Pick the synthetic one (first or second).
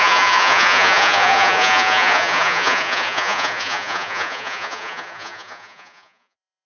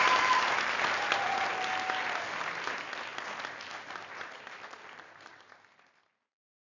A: first